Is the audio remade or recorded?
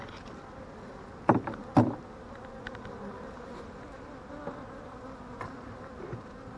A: recorded